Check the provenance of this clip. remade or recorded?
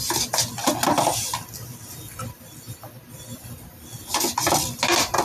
recorded